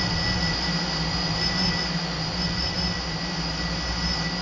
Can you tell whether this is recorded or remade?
recorded